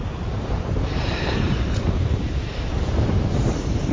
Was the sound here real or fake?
fake